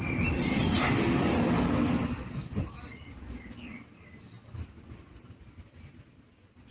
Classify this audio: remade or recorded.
recorded